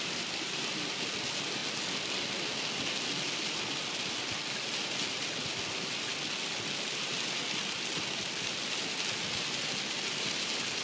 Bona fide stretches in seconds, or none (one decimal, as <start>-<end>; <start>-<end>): 0.0-10.8